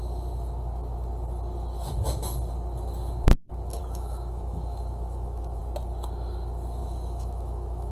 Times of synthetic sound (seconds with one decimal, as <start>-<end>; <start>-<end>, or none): 3.8-5.6; 6.8-7.9